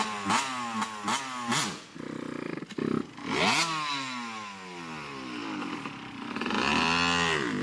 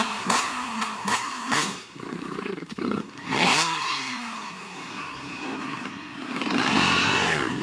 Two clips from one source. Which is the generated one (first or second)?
second